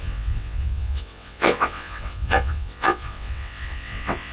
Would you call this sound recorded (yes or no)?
no